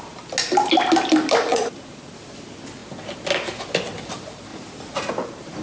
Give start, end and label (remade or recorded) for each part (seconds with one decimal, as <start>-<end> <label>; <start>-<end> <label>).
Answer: 0.0-1.5 recorded; 1.5-2.1 remade; 2.1-4.5 recorded; 4.5-5.1 remade; 5.1-5.6 recorded